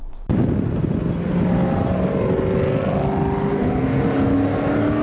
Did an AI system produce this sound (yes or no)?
no